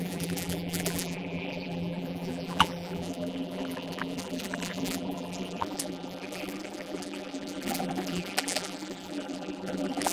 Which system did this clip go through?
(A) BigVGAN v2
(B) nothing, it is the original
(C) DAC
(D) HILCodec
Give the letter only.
A